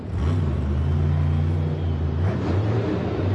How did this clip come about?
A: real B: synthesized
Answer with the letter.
A